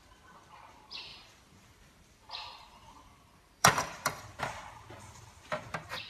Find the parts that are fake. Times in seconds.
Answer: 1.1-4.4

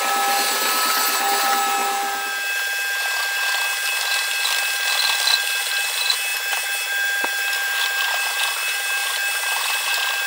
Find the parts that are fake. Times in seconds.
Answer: 1.8-3.9; 6.3-8.4; 9.0-10.3